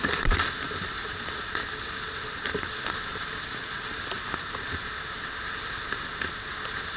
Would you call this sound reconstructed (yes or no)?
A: no